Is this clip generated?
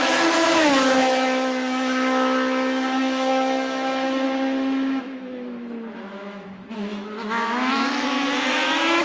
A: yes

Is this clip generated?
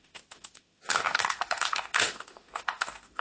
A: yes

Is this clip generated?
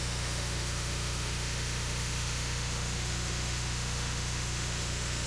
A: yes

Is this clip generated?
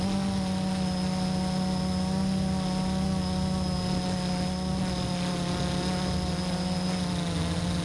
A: no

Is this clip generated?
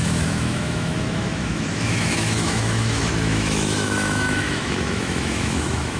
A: yes